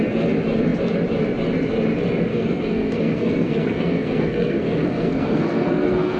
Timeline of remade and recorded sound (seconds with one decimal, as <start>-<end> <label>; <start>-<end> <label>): 0.0-2.3 recorded; 2.3-6.2 remade